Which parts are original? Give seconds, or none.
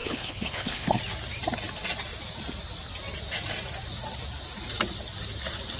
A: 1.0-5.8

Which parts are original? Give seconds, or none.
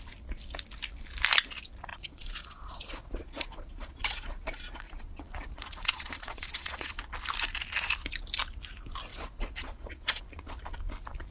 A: 0.0-1.9; 7.0-9.1; 10.2-11.3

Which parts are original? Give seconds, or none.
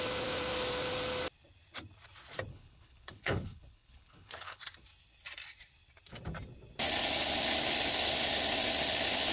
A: 0.0-2.5; 4.6-9.3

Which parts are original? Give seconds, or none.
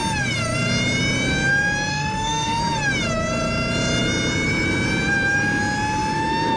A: 0.0-1.9; 2.6-6.6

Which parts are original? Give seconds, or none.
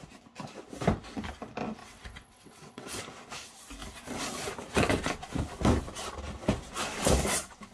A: 0.0-1.8; 3.0-7.7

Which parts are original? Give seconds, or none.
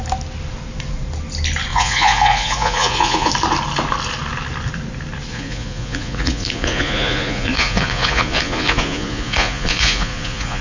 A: 0.0-1.7; 3.3-5.3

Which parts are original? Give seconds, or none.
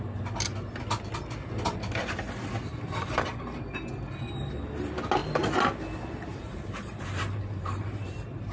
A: 0.0-2.7; 3.6-6.3; 8.1-8.5